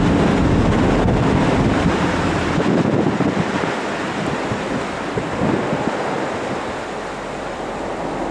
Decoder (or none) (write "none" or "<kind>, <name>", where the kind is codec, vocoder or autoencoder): none